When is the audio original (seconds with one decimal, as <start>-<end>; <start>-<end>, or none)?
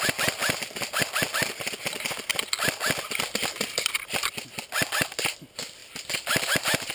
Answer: 0.0-0.4; 1.0-5.8